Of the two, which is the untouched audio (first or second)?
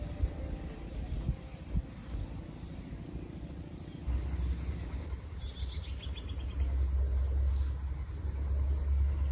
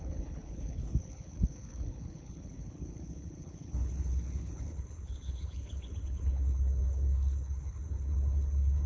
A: first